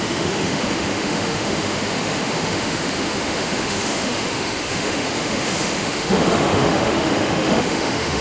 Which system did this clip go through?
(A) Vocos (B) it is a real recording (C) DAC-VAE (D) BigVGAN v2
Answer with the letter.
C